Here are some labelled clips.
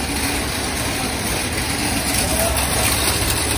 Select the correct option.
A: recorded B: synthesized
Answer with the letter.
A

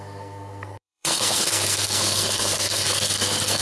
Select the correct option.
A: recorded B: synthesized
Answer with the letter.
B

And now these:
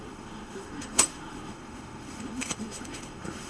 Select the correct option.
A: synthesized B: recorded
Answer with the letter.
A